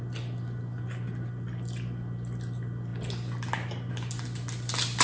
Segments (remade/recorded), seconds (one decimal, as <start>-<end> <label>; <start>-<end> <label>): 0.0-5.0 recorded